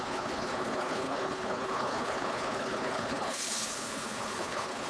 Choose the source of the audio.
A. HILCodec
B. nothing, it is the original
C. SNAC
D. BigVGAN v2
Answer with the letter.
A